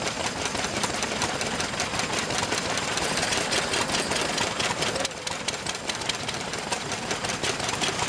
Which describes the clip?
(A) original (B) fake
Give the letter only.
A